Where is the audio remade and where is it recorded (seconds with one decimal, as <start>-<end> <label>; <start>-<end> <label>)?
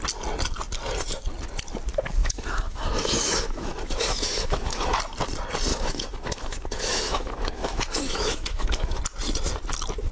0.0-2.2 recorded; 2.2-5.0 remade; 5.0-5.7 recorded; 5.7-9.0 remade; 9.0-10.1 recorded